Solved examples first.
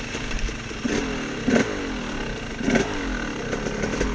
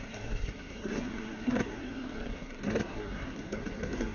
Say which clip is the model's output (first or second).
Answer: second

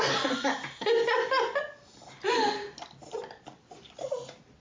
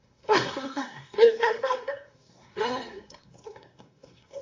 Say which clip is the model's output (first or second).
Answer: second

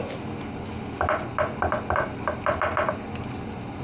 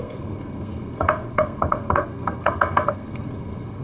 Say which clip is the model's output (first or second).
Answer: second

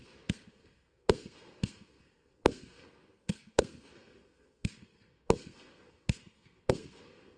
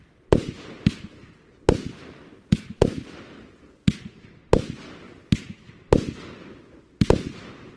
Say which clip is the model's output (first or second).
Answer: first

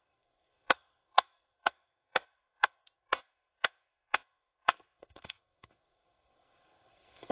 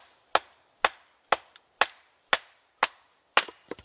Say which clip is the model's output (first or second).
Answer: first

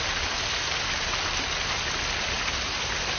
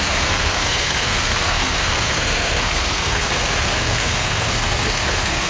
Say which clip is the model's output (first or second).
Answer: second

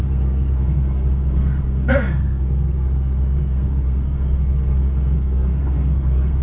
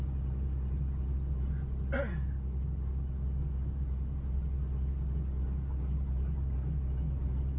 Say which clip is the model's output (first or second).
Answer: first